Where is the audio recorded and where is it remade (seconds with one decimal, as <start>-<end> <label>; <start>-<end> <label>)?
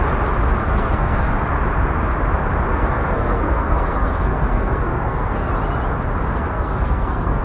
0.0-0.6 recorded; 0.6-1.3 remade; 1.3-2.7 recorded; 2.7-5.5 remade; 5.5-6.3 recorded; 6.3-7.4 remade